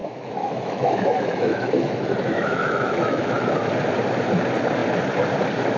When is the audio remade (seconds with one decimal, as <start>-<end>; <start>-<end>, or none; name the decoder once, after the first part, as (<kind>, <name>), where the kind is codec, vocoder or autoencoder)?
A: 0.0-3.5 (autoencoder, DAC-VAE)